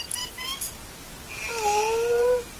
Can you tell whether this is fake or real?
real